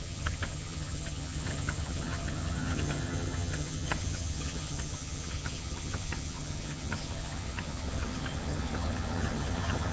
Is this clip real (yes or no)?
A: no